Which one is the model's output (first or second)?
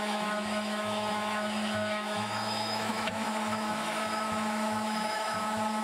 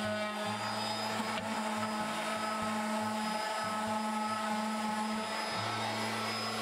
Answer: first